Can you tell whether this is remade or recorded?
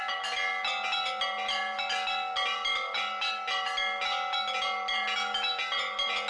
recorded